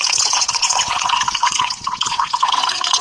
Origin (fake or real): fake